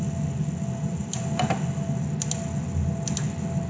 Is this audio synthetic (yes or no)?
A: no